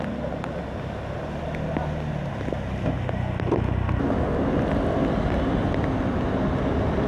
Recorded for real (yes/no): yes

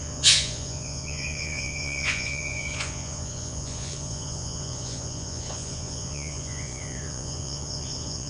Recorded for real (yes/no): no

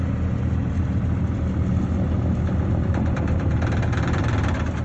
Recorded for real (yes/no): yes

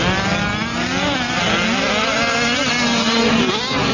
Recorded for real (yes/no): yes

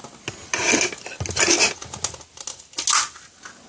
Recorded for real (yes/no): yes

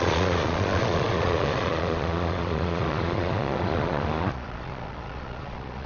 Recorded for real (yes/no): no